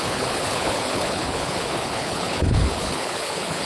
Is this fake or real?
fake